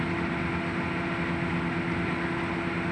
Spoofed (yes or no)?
no